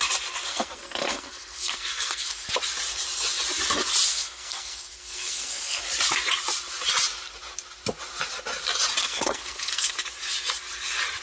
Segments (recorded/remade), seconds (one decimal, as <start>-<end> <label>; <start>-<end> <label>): 0.0-0.5 recorded; 0.5-2.5 remade; 2.5-4.1 recorded; 4.1-5.8 remade; 5.8-9.0 recorded; 9.0-9.9 remade; 9.9-11.2 recorded